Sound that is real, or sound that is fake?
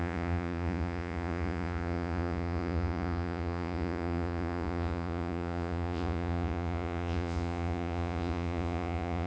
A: fake